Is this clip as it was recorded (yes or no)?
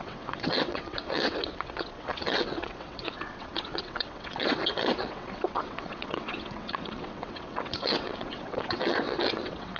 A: no